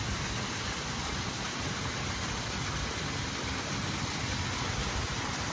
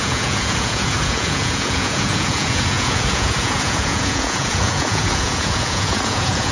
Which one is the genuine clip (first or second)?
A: first